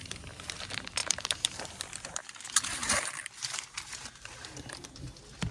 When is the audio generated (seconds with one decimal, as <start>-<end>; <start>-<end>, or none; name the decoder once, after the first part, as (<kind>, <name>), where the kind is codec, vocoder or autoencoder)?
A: 0.0-5.5 (vocoder, BigVGAN v2)